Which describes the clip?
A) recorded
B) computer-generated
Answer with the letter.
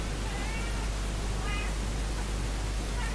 A